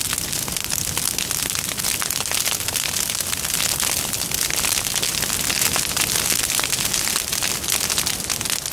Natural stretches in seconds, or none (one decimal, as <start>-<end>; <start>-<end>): 0.0-8.7